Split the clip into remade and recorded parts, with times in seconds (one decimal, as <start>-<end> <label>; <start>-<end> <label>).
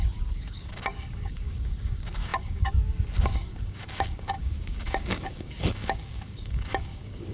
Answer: 0.0-7.3 remade